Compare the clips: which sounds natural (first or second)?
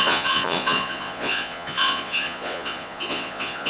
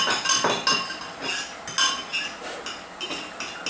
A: second